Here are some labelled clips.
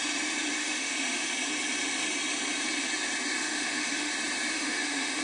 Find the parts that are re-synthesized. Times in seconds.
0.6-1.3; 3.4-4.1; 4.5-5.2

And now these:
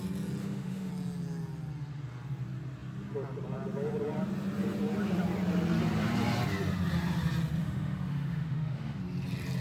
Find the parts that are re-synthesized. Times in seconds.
0.4-0.9; 7.6-9.0

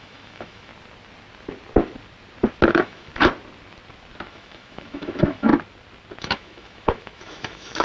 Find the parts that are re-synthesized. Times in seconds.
0.0-0.7; 2.7-3.1; 4.3-5.5; 6.2-7.8

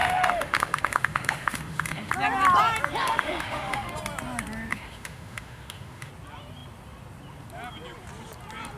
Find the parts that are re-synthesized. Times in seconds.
0.0-2.1; 3.0-3.9; 4.7-6.1